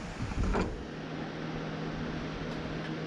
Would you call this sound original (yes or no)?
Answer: yes